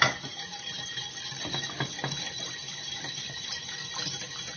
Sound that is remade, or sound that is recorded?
recorded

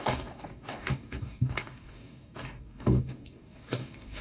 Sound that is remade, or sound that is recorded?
remade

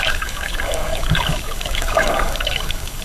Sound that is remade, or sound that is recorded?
remade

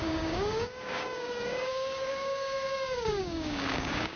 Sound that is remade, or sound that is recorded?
remade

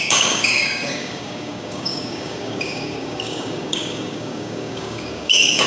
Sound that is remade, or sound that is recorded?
remade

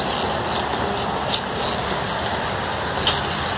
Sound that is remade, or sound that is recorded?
recorded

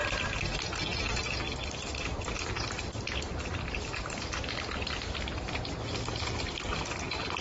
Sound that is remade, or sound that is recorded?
recorded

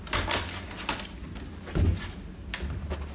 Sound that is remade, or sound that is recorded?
recorded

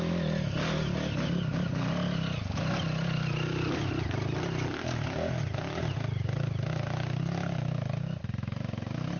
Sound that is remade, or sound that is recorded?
recorded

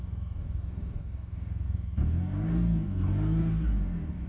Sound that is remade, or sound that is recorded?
remade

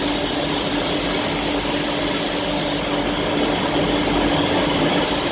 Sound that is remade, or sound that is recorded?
recorded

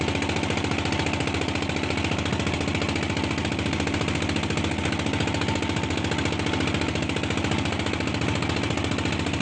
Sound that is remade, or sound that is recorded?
recorded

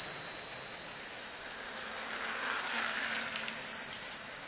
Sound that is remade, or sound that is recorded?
recorded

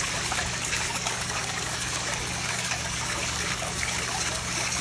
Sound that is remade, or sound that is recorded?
remade